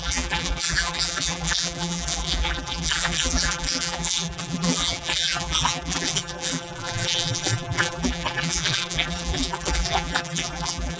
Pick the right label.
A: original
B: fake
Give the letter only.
B